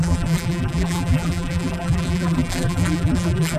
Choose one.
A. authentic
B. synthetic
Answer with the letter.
B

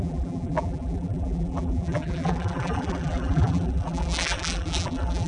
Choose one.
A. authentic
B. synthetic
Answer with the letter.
B